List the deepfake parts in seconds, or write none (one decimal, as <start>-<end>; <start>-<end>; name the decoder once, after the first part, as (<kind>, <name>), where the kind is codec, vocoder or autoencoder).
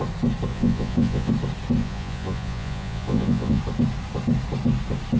0.5-1.3 (vocoder, Vocos); 1.8-3.6